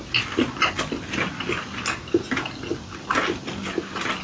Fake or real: real